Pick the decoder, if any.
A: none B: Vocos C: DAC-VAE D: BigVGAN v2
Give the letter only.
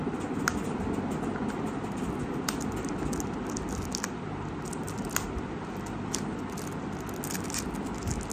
A